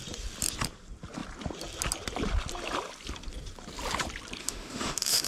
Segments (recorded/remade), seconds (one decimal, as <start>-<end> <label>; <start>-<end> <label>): 0.0-4.4 recorded; 4.4-5.3 remade